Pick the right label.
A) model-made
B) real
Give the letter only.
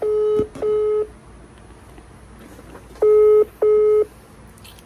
B